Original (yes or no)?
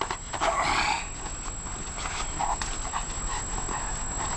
yes